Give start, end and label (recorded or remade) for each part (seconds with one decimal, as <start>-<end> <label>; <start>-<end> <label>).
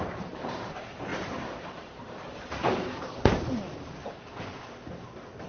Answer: 0.0-5.5 remade